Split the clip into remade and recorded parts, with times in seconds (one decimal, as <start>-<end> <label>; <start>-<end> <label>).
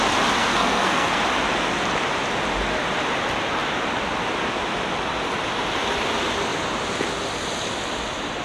0.0-0.4 recorded; 0.4-1.2 remade; 1.2-8.4 recorded